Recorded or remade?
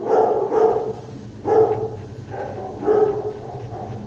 recorded